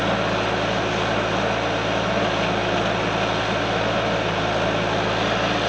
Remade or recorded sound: recorded